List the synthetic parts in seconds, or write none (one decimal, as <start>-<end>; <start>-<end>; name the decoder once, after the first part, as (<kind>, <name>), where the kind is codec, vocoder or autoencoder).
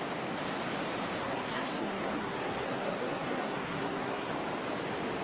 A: 1.2-4.3 (codec, SNAC)